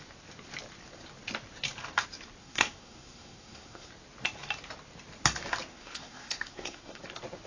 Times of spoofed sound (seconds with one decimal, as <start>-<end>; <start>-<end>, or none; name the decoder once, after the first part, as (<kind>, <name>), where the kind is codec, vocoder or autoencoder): 2.4-3.9 (codec, SNAC); 5.7-7.0